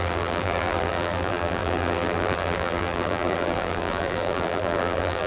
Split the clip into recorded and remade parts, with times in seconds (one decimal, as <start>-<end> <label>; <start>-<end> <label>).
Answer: 0.0-5.3 remade